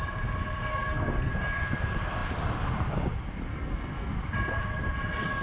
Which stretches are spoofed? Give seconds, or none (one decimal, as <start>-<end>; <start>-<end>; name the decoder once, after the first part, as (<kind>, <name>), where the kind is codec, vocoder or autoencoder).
0.7-1.3 (codec, SNAC); 3.5-4.1